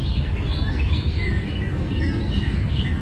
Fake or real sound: fake